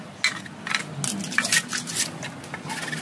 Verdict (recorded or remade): recorded